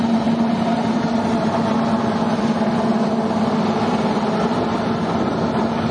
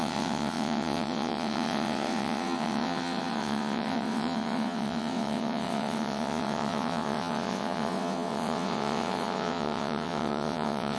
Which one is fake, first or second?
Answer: second